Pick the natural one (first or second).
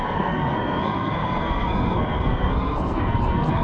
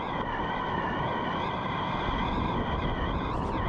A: second